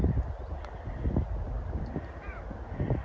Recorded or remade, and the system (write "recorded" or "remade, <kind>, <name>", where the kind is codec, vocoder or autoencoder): recorded